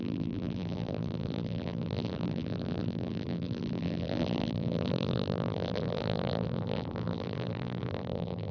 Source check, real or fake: fake